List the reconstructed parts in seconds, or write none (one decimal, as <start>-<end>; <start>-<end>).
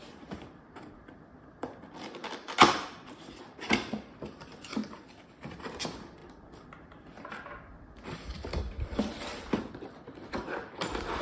0.0-4.8; 5.4-11.2